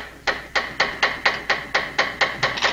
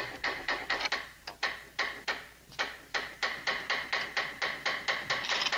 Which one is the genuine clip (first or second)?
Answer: first